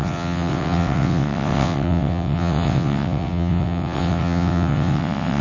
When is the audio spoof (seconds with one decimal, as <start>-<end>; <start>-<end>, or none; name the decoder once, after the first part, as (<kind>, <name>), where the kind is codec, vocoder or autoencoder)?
0.0-5.4 (vocoder, WaveNeXt)